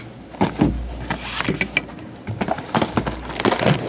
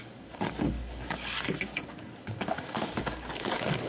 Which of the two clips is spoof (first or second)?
second